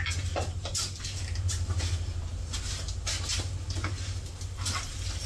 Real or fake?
real